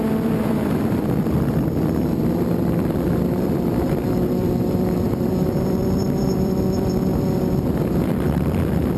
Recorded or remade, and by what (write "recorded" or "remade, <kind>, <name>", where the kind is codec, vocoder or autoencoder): remade, vocoder, BigVGAN v2